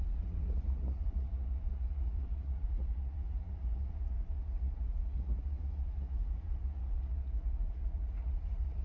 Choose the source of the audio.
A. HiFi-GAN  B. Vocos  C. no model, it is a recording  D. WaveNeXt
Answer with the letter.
B